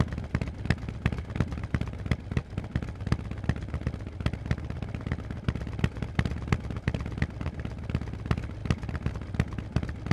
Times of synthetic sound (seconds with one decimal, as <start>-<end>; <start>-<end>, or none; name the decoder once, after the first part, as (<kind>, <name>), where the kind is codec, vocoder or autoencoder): none